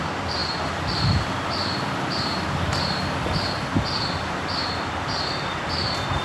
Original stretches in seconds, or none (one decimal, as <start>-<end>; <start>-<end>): 0.0-0.4; 3.7-6.2